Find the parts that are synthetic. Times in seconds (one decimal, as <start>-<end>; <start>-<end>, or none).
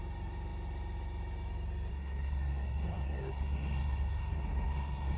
1.9-5.2